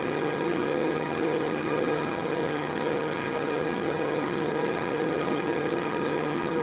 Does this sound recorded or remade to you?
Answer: remade